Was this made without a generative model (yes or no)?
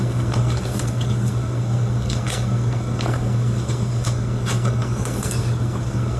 no